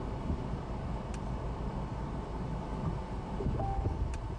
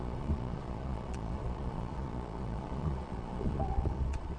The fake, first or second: second